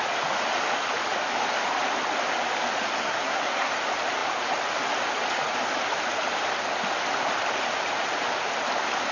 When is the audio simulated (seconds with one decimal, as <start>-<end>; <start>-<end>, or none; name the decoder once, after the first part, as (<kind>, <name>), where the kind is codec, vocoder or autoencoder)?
3.0-3.7 (codec, SNAC)

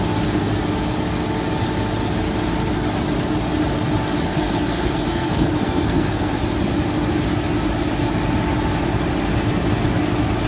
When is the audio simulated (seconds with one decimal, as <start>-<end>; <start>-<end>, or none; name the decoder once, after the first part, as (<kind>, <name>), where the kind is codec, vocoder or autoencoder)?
4.3-6.4 (codec, SNAC)

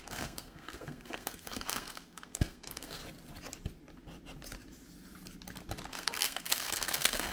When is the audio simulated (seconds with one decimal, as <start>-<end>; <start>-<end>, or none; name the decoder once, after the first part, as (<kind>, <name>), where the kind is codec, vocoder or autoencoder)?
0.0-3.0 (codec, SNAC); 5.9-7.3

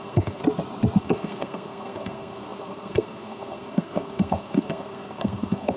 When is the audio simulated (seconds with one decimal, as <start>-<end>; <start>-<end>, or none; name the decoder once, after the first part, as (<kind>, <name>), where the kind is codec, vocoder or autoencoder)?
0.0-0.4 (codec, SNAC); 1.0-5.8

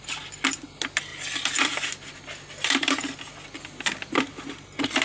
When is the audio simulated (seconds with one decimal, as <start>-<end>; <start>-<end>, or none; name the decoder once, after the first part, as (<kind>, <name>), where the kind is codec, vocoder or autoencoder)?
none

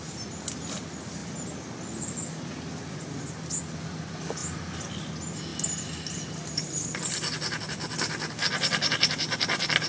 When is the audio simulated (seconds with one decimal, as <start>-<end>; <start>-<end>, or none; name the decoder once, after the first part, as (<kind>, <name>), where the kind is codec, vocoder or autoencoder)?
none

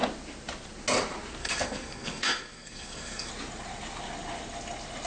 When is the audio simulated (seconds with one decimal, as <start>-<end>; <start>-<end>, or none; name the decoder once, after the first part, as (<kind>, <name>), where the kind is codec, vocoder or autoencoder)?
1.4-3.3 (codec, SNAC)

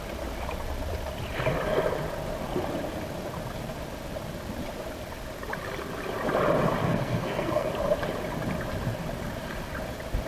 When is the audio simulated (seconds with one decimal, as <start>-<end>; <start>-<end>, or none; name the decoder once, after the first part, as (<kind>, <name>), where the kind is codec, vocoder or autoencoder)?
6.8-7.7 (codec, SNAC)